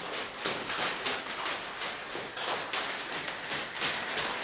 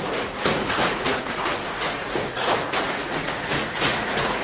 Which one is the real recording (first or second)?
first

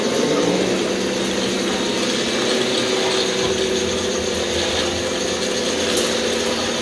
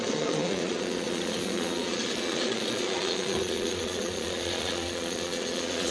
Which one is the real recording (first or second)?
first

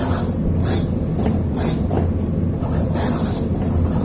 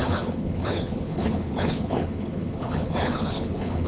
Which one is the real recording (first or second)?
first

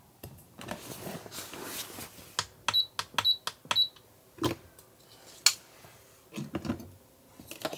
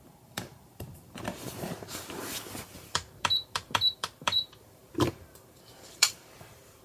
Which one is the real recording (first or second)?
first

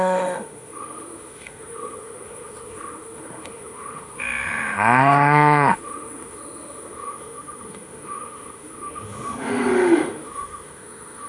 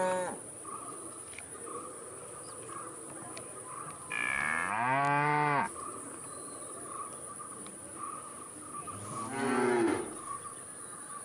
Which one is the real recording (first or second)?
second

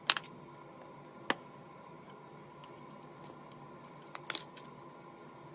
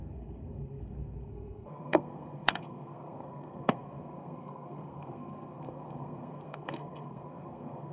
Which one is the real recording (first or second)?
first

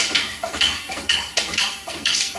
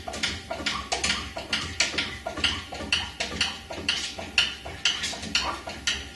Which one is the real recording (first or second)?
second